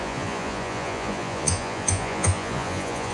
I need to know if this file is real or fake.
fake